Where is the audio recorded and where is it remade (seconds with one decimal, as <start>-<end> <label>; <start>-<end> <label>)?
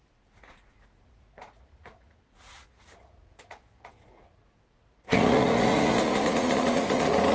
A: 0.0-7.3 remade